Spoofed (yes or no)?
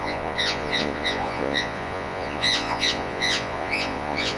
yes